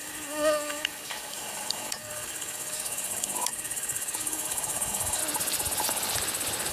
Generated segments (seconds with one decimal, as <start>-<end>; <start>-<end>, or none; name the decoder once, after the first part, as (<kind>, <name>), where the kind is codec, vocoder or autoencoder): 0.0-5.2 (codec, DAC)